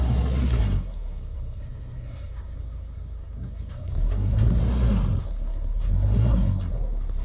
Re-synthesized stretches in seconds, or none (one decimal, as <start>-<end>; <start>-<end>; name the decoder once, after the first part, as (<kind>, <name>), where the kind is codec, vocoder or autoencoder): 0.0-4.6 (codec, SNAC); 5.2-7.2